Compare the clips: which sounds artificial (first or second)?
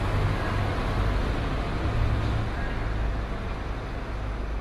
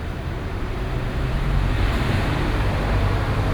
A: second